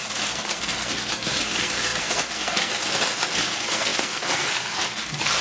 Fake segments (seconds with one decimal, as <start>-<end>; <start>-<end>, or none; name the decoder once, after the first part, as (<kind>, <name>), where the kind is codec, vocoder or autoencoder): 0.0-5.4 (codec, SNAC)